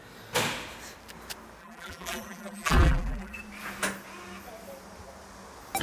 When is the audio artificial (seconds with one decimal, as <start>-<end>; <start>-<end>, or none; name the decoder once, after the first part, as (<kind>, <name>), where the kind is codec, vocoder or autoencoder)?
1.6-3.4 (vocoder, BigVGAN v2)